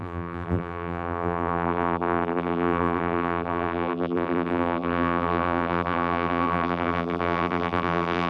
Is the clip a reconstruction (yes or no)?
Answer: yes